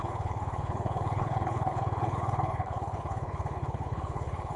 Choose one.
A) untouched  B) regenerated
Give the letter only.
B